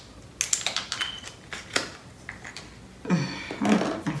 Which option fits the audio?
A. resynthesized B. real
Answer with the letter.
B